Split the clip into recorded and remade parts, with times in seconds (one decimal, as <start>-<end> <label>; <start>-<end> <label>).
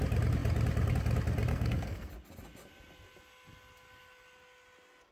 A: 0.0-1.5 recorded; 1.5-2.1 remade; 2.1-5.1 recorded